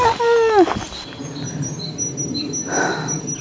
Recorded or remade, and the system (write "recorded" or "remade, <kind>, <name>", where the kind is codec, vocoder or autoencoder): recorded